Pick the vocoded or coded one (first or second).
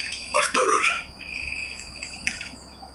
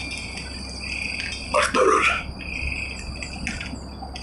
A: first